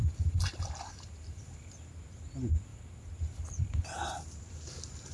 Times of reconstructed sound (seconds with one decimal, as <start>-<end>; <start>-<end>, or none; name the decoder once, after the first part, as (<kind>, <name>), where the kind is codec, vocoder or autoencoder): none